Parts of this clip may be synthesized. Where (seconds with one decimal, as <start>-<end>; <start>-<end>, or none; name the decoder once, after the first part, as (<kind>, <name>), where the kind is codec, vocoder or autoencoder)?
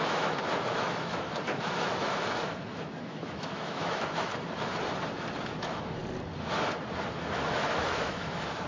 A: 0.0-4.3 (autoencoder, DAC-VAE); 5.6-6.0; 7.2-8.7